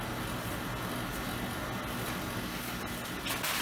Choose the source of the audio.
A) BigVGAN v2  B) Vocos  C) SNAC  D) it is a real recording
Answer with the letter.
D